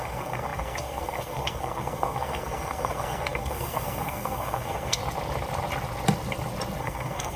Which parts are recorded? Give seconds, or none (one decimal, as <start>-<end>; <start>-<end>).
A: 5.0-6.8